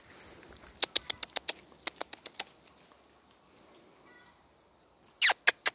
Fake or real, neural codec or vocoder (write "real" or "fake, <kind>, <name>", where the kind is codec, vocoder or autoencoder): real